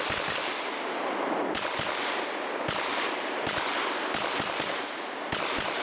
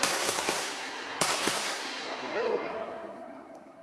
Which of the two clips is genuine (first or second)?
first